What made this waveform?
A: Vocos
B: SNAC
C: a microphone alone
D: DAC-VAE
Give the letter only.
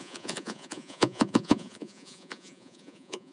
A